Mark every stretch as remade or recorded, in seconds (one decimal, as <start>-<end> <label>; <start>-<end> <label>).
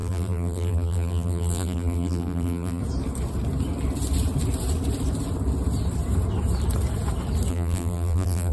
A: 0.0-2.8 remade; 2.8-7.5 recorded; 7.5-8.5 remade